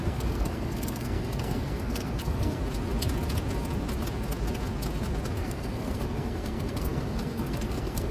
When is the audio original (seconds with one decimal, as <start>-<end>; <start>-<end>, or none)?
2.6-5.4

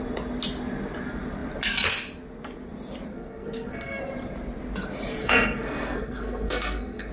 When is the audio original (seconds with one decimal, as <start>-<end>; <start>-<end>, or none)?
0.0-3.1; 4.0-5.2